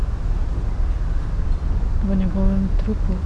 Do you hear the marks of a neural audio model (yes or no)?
no